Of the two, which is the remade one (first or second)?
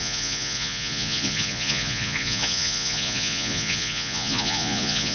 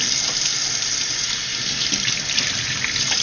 first